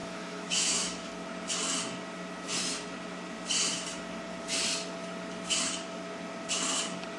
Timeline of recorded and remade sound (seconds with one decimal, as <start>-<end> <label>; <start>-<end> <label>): 0.0-1.1 remade; 1.1-7.2 recorded